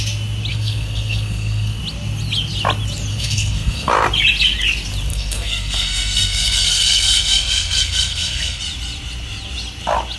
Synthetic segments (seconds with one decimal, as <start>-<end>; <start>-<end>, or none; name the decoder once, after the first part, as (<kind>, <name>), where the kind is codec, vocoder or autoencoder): 0.5-1.8 (codec, SNAC); 3.1-3.9; 5.1-8.6